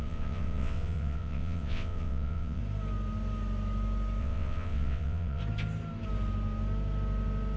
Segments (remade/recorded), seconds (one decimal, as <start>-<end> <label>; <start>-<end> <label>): 0.0-2.6 remade; 2.6-4.2 recorded; 4.2-5.4 remade; 5.4-7.6 recorded